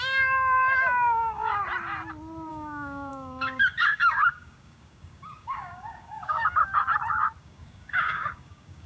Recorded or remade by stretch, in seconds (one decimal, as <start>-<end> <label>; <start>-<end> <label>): 0.0-1.6 remade; 1.6-2.5 recorded; 2.5-6.7 remade; 6.7-7.4 recorded; 7.4-8.9 remade